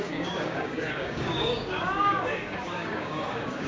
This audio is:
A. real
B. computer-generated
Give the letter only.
B